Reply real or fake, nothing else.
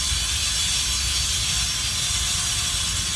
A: real